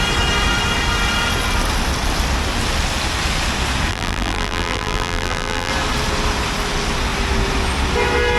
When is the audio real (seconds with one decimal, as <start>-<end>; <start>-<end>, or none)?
0.0-3.9; 5.7-8.4